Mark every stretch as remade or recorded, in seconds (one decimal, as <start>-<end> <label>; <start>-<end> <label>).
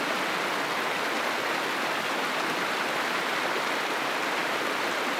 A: 0.0-5.2 recorded